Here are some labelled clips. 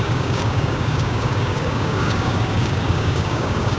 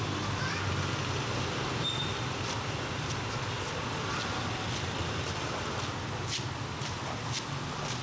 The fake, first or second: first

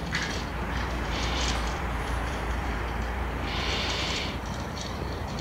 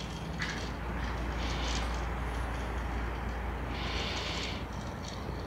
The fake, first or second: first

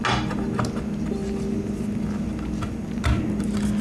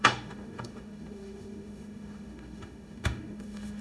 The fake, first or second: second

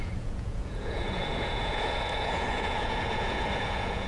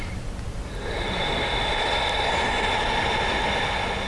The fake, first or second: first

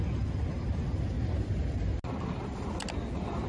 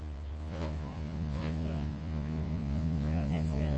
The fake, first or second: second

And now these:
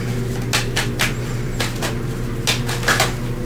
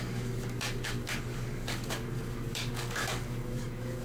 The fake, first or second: second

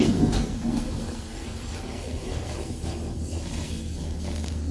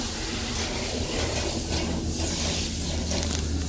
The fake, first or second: first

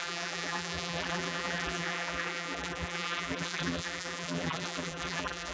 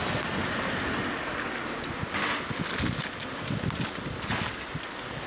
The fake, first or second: first